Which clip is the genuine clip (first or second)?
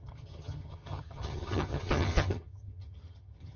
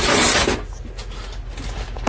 second